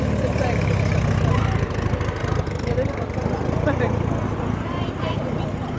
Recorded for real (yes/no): yes